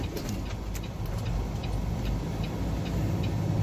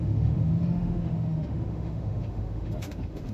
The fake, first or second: second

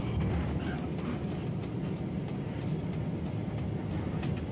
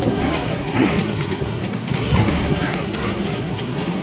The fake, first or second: second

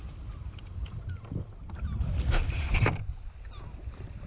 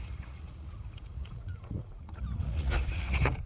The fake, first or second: second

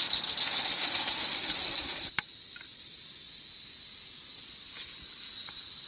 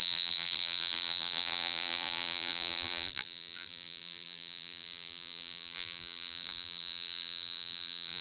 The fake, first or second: second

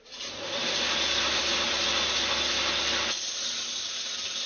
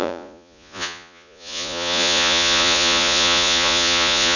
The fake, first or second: second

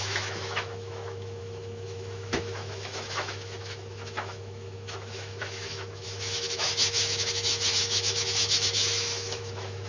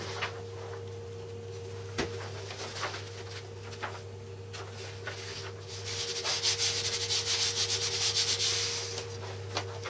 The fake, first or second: first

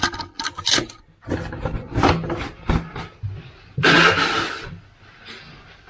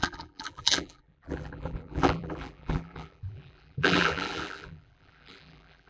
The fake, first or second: second